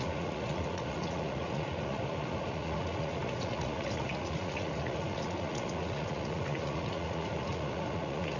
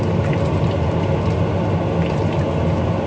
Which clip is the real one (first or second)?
second